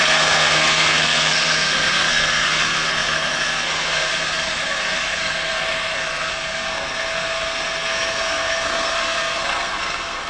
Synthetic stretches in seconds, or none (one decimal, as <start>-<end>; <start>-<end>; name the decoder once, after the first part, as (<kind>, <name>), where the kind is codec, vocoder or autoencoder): 0.0-10.3 (codec, SNAC)